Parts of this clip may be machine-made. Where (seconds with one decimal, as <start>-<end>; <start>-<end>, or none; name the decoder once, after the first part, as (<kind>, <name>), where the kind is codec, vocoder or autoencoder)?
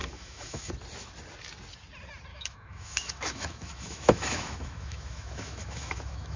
0.0-0.7 (autoencoder, DAC-VAE); 2.3-6.4